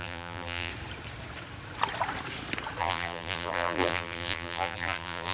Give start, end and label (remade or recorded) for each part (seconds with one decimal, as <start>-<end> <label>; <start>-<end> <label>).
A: 0.0-0.7 remade; 0.7-2.8 recorded; 2.8-5.3 remade